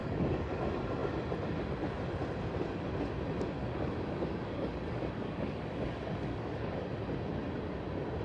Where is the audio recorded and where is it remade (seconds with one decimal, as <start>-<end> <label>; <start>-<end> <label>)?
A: 0.0-0.6 remade; 0.6-3.6 recorded; 3.6-6.8 remade; 6.8-8.2 recorded